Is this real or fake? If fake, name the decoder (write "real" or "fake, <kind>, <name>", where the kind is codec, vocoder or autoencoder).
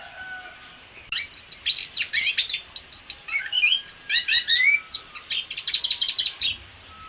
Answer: real